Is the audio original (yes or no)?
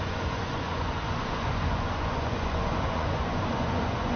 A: no